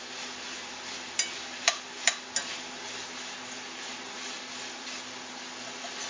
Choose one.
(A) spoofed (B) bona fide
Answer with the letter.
B